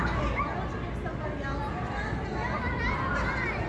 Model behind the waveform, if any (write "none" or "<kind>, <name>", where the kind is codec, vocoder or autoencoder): none